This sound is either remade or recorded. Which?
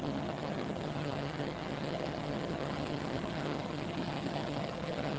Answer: remade